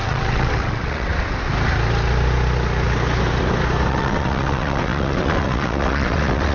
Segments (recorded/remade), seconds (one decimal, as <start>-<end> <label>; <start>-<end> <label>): 0.0-1.1 remade; 1.1-3.9 recorded; 3.9-6.5 remade